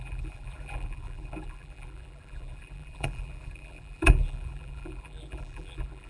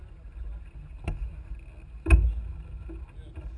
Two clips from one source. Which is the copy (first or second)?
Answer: first